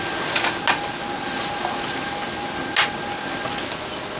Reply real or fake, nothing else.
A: real